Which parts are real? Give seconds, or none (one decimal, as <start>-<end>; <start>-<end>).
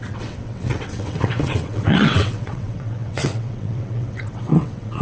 none